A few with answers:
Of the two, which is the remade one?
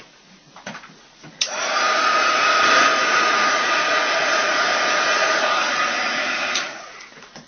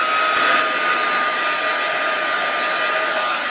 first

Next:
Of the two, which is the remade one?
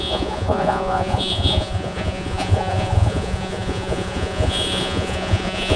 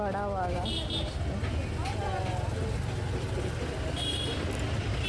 first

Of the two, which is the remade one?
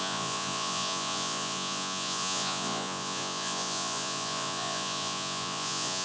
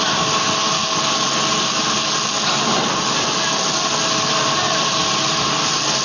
first